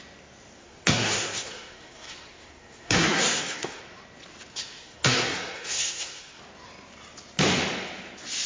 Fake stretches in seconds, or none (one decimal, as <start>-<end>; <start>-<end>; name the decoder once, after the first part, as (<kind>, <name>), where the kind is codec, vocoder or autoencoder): 0.6-3.8 (codec, SNAC); 4.5-6.4